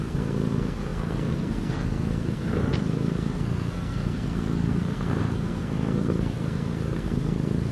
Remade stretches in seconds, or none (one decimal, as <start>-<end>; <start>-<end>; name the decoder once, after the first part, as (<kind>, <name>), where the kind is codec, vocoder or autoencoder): 0.0-7.7 (codec, SNAC)